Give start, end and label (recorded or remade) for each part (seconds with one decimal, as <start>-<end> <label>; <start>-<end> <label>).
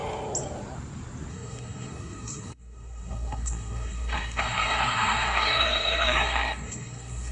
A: 0.0-1.3 recorded; 1.3-7.3 remade